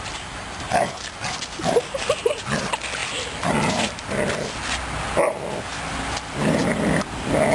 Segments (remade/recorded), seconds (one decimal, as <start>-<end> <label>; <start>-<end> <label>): 0.0-7.5 recorded